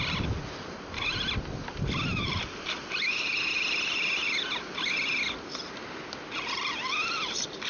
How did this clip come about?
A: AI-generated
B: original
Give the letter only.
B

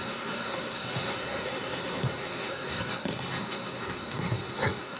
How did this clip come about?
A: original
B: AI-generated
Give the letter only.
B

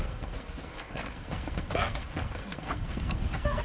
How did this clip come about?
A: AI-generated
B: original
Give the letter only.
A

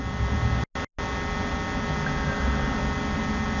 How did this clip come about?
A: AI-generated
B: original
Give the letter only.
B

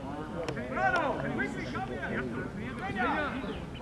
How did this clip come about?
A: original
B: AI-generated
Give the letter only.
A